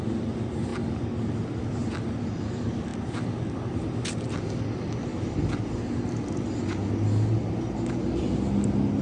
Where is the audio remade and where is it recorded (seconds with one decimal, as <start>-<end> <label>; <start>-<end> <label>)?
0.0-9.0 recorded